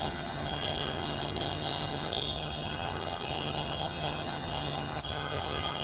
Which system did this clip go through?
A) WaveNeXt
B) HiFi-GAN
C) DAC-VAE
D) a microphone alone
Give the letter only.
B